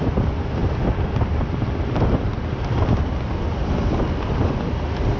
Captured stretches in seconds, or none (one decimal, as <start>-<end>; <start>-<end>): 0.0-5.2